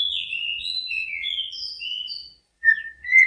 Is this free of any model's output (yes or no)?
no